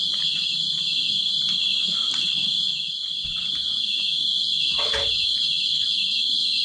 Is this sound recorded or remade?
recorded